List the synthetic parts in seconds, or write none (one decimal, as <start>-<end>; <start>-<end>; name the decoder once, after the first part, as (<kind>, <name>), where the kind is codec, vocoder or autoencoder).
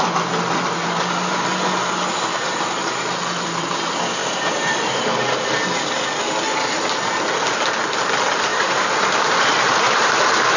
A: 4.2-5.0 (vocoder, BigVGAN v2); 8.5-10.2